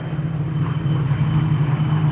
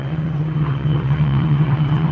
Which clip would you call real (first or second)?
first